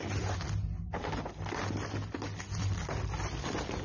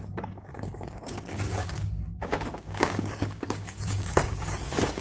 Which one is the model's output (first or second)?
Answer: second